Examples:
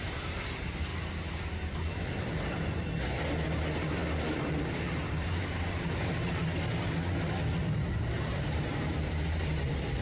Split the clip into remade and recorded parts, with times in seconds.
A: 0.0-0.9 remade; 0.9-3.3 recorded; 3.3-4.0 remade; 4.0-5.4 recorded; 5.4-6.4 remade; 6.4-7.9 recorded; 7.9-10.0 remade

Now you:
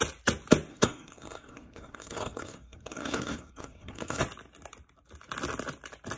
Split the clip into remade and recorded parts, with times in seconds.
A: 0.0-0.7 recorded; 0.7-4.2 remade; 4.2-6.2 recorded

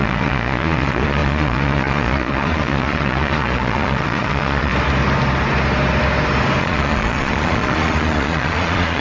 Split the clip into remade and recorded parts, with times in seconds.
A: 0.0-4.7 remade; 4.7-6.6 recorded; 6.6-9.0 remade

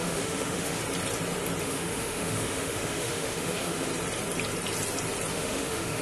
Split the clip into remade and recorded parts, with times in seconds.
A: 0.0-0.8 remade; 0.8-1.6 recorded; 1.6-3.9 remade; 3.9-5.3 recorded; 5.3-6.0 remade

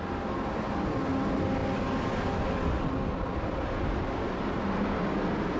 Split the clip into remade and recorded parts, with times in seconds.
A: 0.0-5.6 recorded

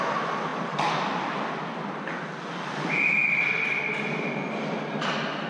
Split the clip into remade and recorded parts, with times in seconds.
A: 0.0-0.5 remade; 0.5-1.7 recorded; 1.7-5.5 remade